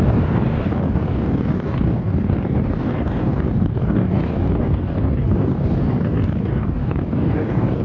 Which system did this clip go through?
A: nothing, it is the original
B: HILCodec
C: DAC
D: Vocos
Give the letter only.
C